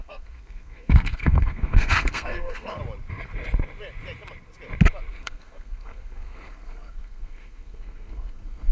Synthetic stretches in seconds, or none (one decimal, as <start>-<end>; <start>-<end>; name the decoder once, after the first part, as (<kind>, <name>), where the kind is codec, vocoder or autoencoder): 0.0-2.8 (codec, SNAC); 5.1-8.7